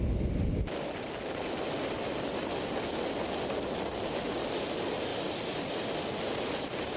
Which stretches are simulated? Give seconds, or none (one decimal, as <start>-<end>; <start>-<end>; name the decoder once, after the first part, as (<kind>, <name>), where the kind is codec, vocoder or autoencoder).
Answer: none